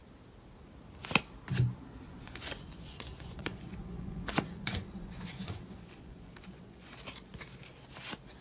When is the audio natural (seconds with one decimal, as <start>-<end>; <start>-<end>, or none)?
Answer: 0.0-2.1; 6.9-8.4